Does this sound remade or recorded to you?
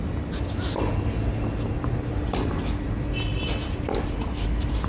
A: recorded